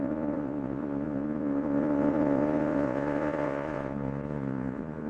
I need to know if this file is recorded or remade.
remade